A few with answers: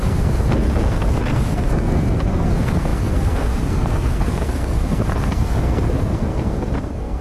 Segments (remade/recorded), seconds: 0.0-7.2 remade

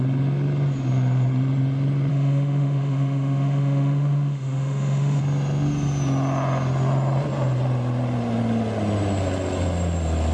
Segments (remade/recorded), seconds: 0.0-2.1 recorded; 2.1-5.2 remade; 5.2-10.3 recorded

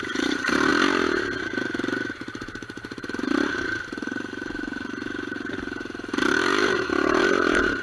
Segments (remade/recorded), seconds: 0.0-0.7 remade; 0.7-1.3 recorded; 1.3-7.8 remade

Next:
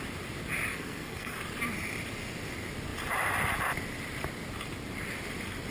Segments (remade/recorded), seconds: 0.0-0.7 recorded; 0.7-1.4 remade; 1.4-5.7 recorded

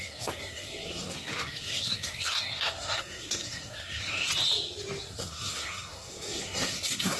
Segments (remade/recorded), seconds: 0.0-4.3 remade; 4.3-5.0 recorded; 5.0-7.2 remade

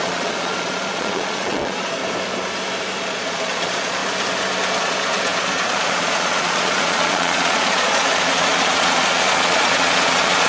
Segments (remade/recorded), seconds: 0.0-2.0 remade; 2.0-3.0 recorded; 3.0-4.0 remade; 4.0-4.8 recorded; 4.8-10.5 remade

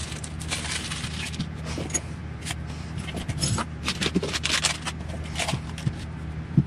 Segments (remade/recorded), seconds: 0.0-0.8 remade; 0.8-6.7 recorded

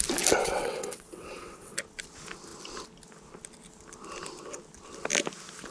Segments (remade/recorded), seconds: 0.0-0.4 recorded; 0.4-1.8 remade; 1.8-5.7 recorded